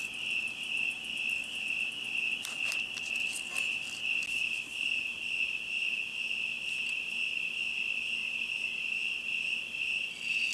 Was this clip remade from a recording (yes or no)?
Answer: no